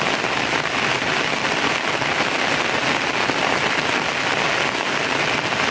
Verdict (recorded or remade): recorded